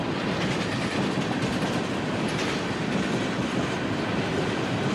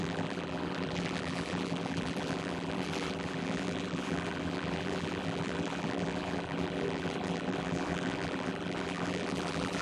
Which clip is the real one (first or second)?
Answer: first